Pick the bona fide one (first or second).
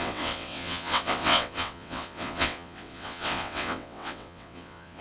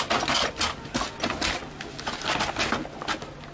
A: second